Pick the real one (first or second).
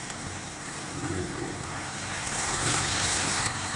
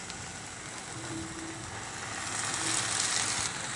second